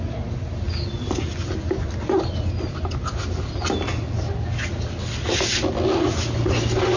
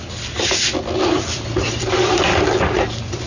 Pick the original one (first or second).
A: first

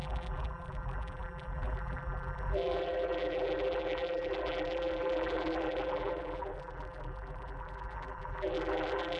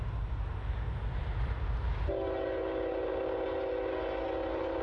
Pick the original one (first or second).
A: second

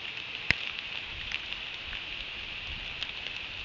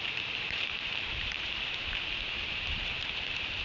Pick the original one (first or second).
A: first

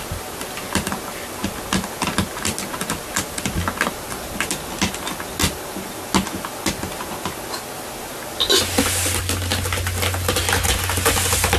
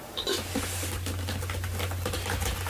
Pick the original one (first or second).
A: first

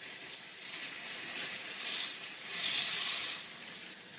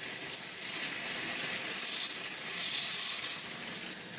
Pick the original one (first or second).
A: second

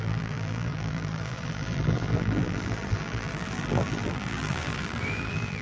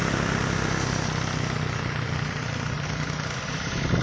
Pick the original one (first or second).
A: second